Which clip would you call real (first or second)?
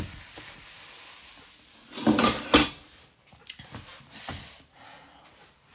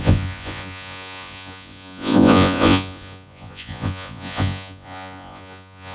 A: first